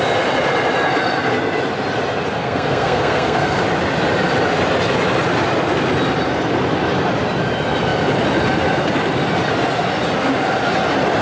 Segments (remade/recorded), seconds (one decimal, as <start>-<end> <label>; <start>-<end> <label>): 0.0-2.4 recorded; 2.4-3.6 remade; 3.6-11.2 recorded